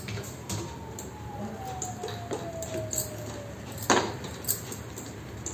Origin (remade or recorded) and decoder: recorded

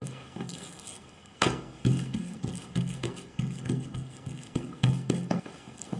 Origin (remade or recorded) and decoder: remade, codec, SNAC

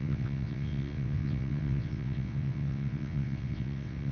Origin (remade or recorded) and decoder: remade, vocoder, WaveNeXt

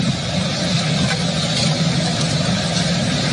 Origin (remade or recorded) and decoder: recorded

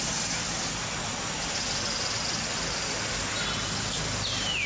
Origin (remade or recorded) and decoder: recorded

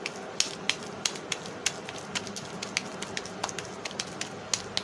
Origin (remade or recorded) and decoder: recorded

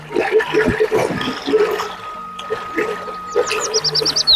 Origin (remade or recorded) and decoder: recorded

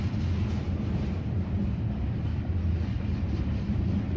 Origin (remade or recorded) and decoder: recorded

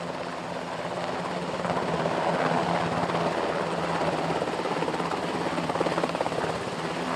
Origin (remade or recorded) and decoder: recorded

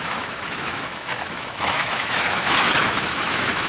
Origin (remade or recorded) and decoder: remade, autoencoder, DAC-VAE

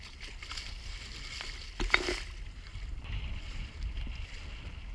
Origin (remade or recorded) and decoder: recorded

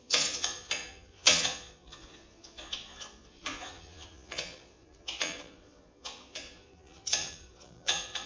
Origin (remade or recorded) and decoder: remade, vocoder, Vocos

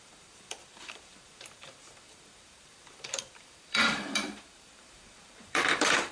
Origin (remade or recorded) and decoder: remade, vocoder, BigVGAN v2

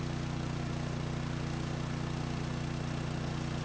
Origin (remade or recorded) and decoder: recorded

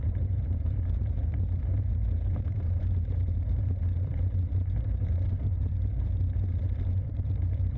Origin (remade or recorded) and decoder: remade, vocoder, BigVGAN v2